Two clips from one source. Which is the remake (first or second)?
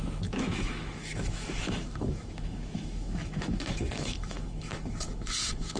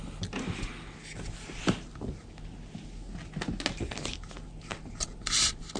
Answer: first